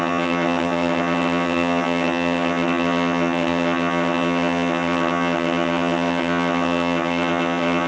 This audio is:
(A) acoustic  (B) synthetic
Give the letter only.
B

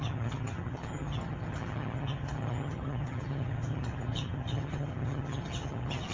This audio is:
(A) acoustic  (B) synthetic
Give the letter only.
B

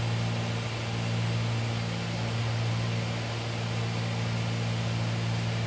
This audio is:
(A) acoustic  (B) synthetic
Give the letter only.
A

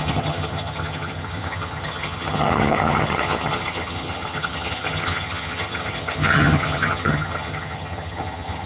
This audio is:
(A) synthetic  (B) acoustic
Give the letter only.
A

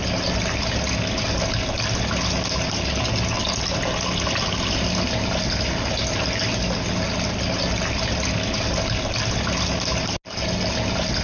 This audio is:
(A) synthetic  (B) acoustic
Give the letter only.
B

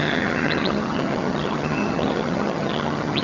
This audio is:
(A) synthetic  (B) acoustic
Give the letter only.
A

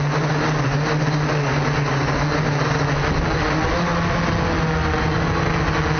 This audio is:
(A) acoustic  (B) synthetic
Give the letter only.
A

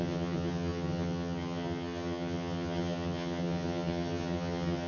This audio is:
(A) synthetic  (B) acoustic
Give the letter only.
A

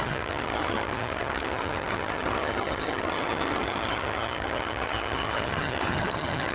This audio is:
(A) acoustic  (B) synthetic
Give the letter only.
B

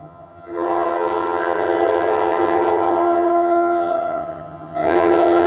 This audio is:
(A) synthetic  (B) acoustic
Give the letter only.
A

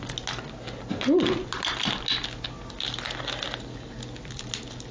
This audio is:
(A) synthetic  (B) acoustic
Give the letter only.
B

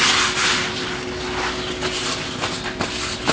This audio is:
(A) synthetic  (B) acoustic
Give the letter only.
B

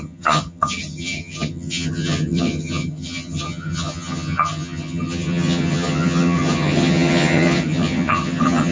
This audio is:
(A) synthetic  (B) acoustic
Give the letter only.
A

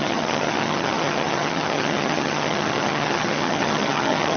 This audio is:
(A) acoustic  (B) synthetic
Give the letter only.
B